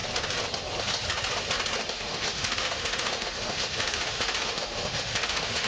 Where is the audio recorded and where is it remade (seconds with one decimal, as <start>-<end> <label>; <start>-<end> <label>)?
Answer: 0.0-1.9 recorded; 1.9-5.7 remade